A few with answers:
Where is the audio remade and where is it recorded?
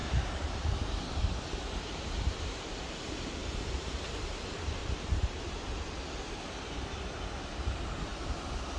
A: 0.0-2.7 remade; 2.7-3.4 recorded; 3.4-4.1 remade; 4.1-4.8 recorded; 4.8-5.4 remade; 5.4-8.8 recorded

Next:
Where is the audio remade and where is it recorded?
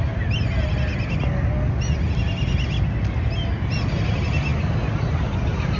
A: 0.0-5.8 recorded